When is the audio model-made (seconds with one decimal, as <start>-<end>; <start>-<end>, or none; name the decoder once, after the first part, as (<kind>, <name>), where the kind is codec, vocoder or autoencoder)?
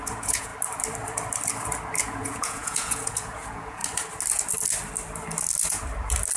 0.0-0.5 (vocoder, Vocos); 2.0-3.8